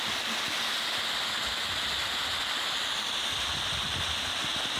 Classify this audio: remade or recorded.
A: recorded